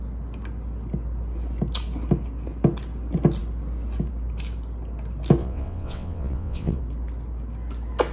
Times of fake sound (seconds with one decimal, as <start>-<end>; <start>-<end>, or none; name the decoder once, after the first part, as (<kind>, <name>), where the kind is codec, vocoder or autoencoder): 5.4-6.8 (vocoder, WaveNeXt)